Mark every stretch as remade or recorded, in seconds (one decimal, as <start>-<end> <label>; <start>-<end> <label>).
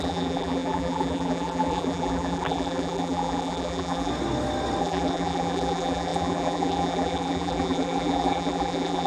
0.0-4.1 remade; 4.1-4.8 recorded; 4.8-9.1 remade